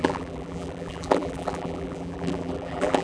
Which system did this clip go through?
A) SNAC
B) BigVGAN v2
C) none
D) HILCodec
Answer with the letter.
B